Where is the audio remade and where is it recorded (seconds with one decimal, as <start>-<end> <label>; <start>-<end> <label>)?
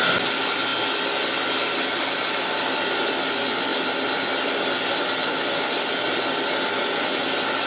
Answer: 0.0-7.7 recorded